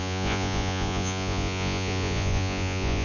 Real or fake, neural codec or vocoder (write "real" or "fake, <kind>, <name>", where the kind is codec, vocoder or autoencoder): fake, vocoder, Vocos